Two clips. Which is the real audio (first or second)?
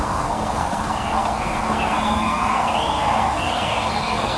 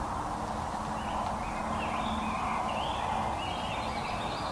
second